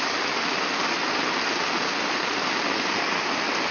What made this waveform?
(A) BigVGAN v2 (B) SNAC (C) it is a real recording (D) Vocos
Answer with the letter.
C